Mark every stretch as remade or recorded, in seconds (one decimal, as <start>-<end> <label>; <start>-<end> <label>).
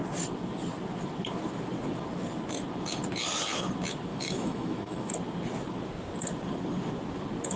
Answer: 0.0-4.1 recorded; 4.1-5.1 remade; 5.1-7.6 recorded